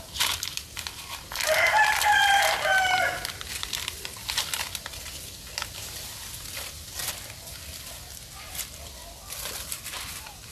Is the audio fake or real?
fake